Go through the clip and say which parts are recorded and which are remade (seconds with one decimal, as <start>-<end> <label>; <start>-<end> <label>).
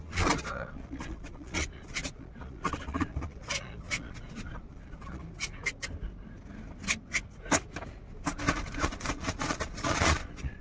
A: 0.0-5.2 remade; 5.2-8.8 recorded; 8.8-10.6 remade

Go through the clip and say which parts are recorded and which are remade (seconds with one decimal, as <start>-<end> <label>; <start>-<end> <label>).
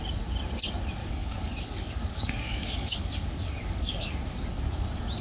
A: 0.0-1.0 recorded; 1.0-4.1 remade; 4.1-5.2 recorded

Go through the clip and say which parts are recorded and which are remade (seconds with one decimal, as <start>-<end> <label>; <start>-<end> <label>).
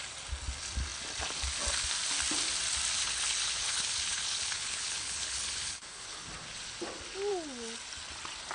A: 0.0-3.0 recorded; 3.0-6.3 remade; 6.3-8.5 recorded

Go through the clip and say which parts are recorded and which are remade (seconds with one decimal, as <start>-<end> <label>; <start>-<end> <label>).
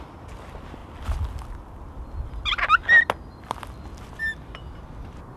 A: 0.0-5.4 recorded